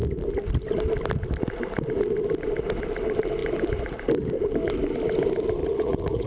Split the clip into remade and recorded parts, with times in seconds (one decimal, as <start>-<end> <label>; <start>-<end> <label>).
0.0-5.6 recorded; 5.6-6.3 remade